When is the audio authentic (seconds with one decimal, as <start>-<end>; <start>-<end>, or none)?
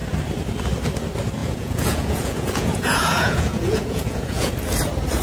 0.0-1.4; 4.5-5.2